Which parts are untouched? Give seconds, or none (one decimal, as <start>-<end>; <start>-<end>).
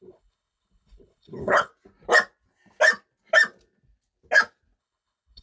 1.7-4.8